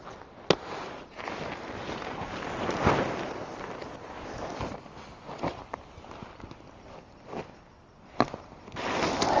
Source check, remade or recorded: recorded